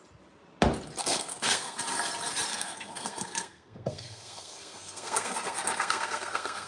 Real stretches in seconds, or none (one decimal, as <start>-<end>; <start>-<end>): 0.0-1.0; 1.8-2.5